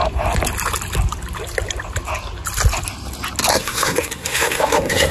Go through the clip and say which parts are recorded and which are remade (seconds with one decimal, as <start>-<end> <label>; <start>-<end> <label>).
0.0-3.5 recorded; 3.5-5.1 remade